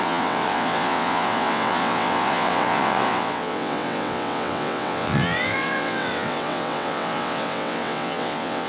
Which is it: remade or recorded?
remade